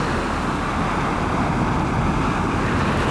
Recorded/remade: recorded